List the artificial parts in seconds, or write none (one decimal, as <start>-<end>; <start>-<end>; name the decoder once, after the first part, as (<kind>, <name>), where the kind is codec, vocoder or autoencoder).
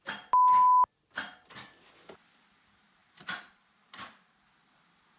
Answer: 3.0-4.4 (vocoder, BigVGAN v2)